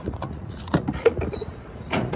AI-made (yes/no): yes